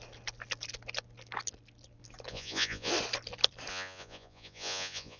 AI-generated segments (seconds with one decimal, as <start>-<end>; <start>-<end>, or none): 2.3-2.9; 3.7-5.2